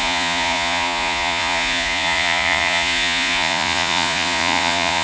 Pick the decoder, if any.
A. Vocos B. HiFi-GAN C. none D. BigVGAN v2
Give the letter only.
A